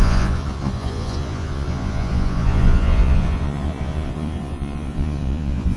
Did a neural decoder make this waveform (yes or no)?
yes